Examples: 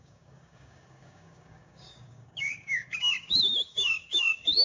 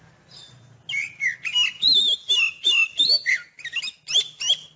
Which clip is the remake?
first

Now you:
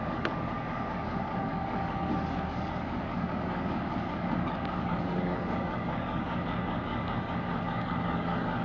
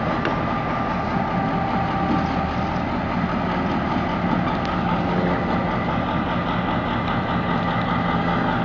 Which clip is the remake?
first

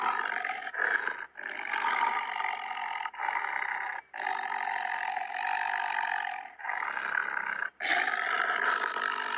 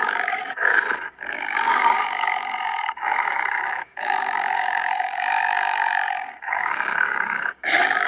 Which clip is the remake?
second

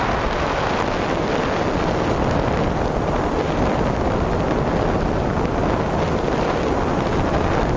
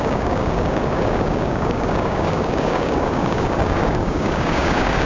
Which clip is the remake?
second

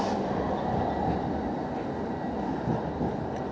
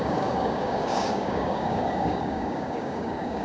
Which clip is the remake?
second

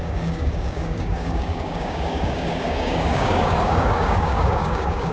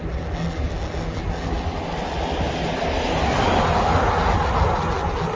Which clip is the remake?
first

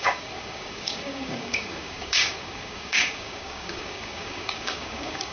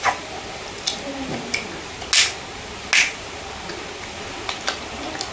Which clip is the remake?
first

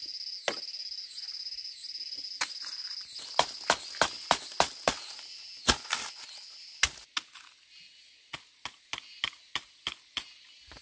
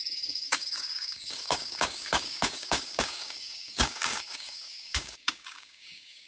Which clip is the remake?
second